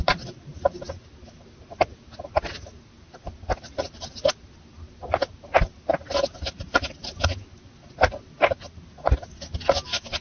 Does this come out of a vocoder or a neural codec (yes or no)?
no